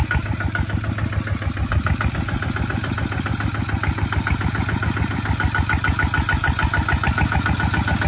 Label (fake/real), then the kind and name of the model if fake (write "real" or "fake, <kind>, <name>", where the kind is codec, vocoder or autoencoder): real